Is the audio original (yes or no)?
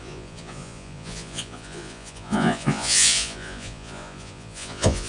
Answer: no